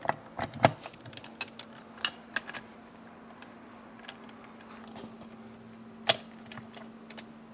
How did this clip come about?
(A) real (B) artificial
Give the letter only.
A